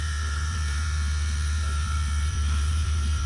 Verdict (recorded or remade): remade